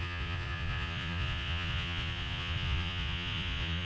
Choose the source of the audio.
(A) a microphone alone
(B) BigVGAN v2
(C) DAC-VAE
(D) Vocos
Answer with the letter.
D